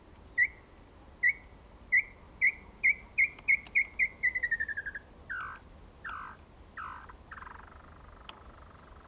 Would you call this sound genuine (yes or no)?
yes